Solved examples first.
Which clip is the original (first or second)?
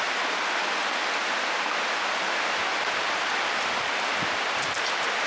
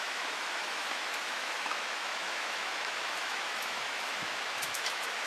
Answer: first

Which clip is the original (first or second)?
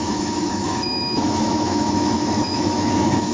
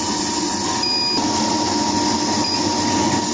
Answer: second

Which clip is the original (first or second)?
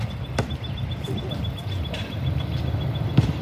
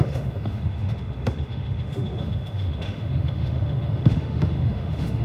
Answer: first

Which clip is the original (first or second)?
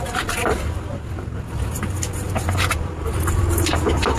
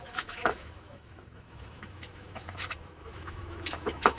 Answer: first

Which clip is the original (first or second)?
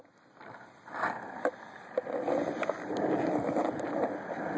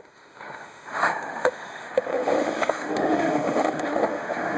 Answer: first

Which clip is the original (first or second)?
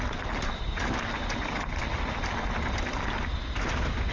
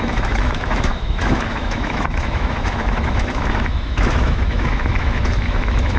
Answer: first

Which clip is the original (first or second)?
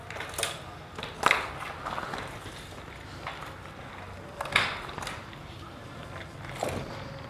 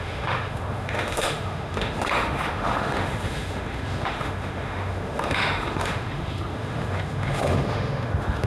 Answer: first